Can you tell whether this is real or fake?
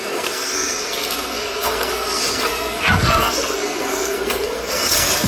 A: fake